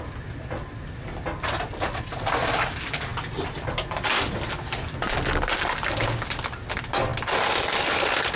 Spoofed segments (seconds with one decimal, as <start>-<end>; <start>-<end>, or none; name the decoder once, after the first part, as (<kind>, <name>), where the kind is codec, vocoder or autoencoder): none

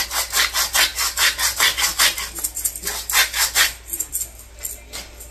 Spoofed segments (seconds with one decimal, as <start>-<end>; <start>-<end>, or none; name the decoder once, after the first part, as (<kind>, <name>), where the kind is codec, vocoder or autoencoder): none

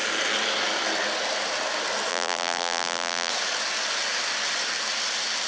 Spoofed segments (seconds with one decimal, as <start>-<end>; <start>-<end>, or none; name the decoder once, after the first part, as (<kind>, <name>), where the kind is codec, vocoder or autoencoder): 2.1-3.3 (vocoder, BigVGAN v2)

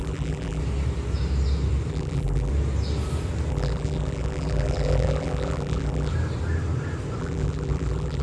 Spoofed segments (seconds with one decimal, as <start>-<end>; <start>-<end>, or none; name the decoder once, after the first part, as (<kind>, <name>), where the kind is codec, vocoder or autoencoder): 0.0-0.6 (vocoder, BigVGAN v2); 1.9-2.5; 3.5-6.1; 7.2-8.2

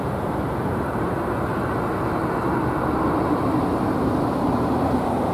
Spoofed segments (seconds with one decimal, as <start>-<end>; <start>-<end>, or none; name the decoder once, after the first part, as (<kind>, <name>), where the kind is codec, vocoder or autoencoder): 0.0-1.5 (vocoder, BigVGAN v2); 3.1-5.3

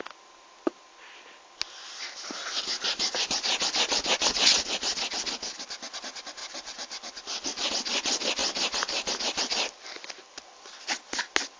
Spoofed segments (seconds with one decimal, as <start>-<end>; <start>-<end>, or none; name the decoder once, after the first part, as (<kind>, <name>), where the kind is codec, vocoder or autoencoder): 2.4-4.5 (vocoder, BigVGAN v2); 6.4-7.7; 8.4-9.2

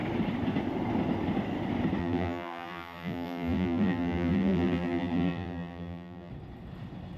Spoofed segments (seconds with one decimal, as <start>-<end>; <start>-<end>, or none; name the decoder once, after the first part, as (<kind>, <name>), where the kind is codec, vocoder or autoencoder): 2.0-6.3 (vocoder, BigVGAN v2)

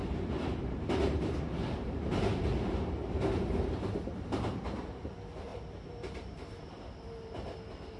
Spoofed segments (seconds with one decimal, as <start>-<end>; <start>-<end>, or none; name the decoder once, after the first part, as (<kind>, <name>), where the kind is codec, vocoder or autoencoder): 0.0-4.8 (vocoder, BigVGAN v2); 5.5-6.6